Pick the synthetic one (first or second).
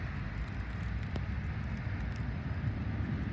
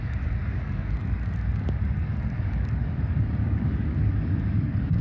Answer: second